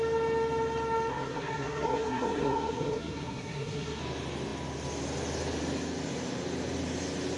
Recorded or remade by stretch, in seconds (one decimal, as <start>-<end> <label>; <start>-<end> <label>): 0.0-1.1 recorded; 1.1-4.0 remade; 4.0-7.4 recorded